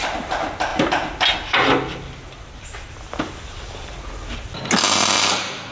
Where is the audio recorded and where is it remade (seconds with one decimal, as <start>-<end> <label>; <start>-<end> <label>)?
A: 0.0-5.7 recorded

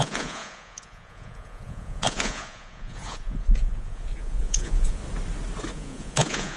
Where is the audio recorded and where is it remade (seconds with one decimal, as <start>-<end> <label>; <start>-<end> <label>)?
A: 0.0-5.0 remade; 5.0-5.7 recorded; 5.7-6.6 remade

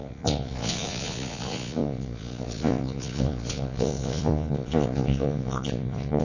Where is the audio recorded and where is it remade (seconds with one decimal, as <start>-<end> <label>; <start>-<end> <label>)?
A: 0.0-6.2 remade

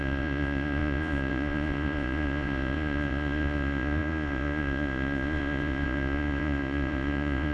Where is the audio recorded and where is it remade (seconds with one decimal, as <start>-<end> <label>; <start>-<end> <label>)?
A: 0.0-7.5 remade

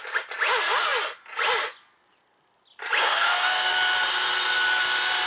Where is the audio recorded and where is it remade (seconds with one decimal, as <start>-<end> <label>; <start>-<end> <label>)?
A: 0.0-3.0 recorded; 3.0-3.7 remade; 3.7-5.3 recorded

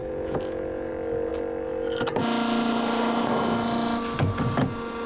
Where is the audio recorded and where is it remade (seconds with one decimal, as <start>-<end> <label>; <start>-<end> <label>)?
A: 0.0-0.9 remade; 0.9-5.1 recorded

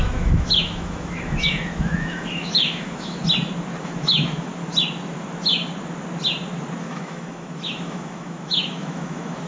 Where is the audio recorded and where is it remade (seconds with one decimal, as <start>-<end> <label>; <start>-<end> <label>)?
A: 0.0-3.2 remade; 3.2-3.8 recorded; 3.8-4.5 remade; 4.5-6.8 recorded; 6.8-9.5 remade

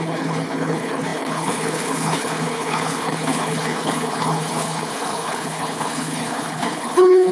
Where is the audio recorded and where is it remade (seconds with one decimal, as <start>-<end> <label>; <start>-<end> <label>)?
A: 0.0-7.3 remade